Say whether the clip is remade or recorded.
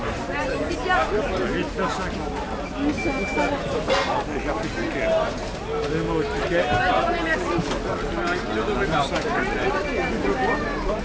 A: recorded